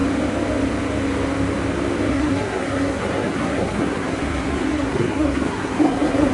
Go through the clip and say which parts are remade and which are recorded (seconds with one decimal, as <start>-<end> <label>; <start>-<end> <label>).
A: 0.0-2.1 recorded; 2.1-6.3 remade